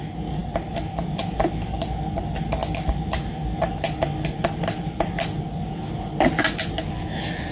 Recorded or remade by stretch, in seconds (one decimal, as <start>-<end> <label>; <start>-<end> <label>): 0.0-7.5 recorded